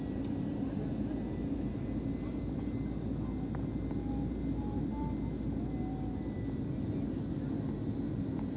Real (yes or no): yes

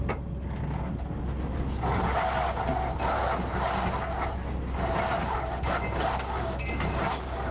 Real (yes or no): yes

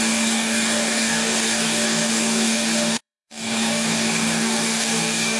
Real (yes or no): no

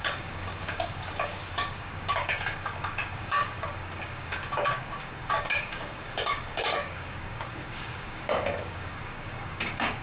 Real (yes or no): no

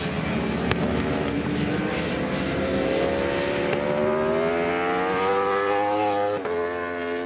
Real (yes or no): yes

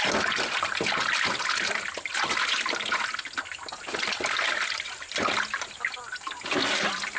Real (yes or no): yes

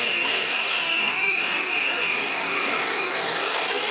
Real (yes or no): no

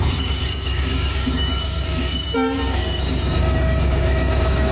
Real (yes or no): no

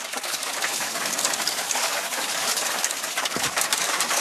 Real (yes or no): no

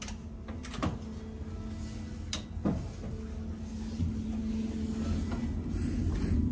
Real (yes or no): yes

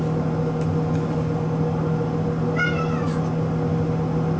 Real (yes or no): yes